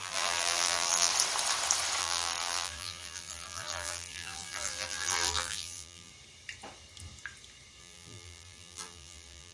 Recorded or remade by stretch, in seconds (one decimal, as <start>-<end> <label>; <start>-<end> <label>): 0.0-1.1 remade; 1.1-2.0 recorded; 2.0-6.1 remade; 6.1-7.8 recorded; 7.8-9.5 remade